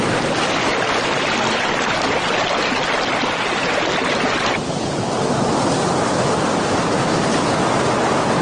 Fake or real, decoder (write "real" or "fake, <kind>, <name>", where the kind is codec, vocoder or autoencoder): real